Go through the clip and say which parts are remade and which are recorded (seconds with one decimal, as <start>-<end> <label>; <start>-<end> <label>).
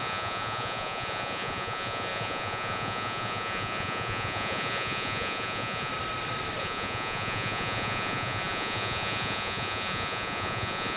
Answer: 0.0-5.9 remade; 5.9-6.6 recorded; 6.6-11.0 remade